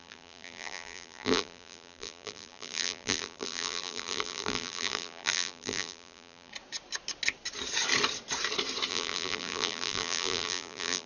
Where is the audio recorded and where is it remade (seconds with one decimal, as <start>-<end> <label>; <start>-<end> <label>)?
0.0-6.5 remade; 6.5-8.9 recorded; 8.9-11.1 remade